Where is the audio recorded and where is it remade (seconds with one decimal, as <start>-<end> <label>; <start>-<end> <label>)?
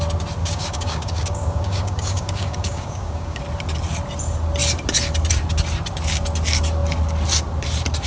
0.0-0.4 recorded; 0.4-3.4 remade; 3.4-8.1 recorded